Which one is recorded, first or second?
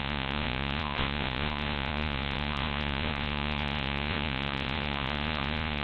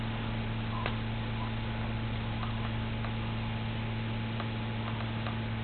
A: second